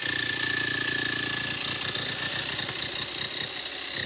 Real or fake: real